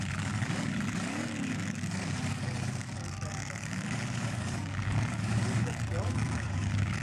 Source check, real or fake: fake